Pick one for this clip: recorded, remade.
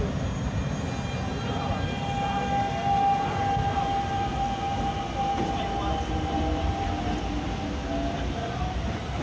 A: recorded